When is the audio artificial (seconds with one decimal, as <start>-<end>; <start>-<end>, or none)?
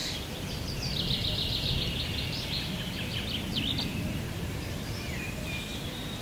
0.0-0.7; 3.9-6.2